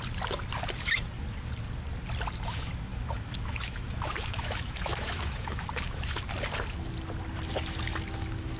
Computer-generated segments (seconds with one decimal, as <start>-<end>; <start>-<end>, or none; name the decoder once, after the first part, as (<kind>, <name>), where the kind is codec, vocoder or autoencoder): 2.9-6.2 (autoencoder, DAC-VAE)